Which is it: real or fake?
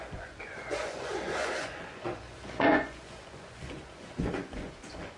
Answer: fake